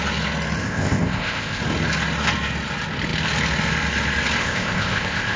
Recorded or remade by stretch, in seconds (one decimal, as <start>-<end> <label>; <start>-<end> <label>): 0.0-0.6 recorded; 0.6-1.6 remade; 1.6-4.4 recorded; 4.4-5.4 remade